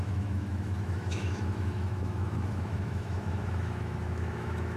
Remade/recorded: remade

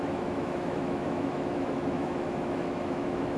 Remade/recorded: remade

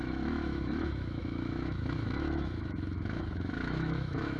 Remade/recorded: remade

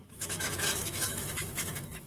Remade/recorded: remade